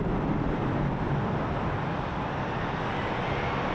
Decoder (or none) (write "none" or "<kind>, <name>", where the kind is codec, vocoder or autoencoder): none